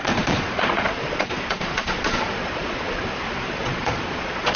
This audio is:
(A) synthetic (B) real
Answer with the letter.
A